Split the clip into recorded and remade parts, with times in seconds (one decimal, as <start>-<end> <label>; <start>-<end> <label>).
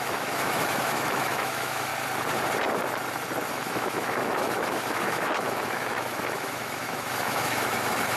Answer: 0.0-1.9 remade; 1.9-3.5 recorded; 3.5-8.2 remade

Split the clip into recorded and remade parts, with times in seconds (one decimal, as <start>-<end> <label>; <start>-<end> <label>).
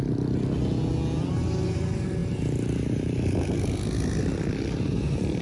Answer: 0.0-5.4 recorded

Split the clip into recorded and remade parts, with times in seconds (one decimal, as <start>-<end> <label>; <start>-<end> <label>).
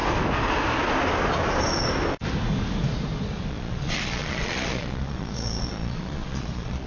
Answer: 0.0-3.5 recorded; 3.5-6.9 remade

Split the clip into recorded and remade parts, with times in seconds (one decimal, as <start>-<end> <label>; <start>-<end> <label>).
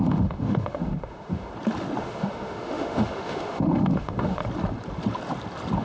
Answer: 0.0-1.5 remade; 1.5-2.0 recorded; 2.0-4.4 remade; 4.4-5.8 recorded